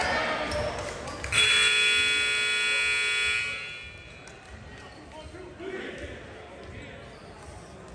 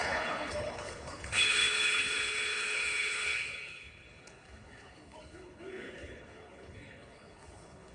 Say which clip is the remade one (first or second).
second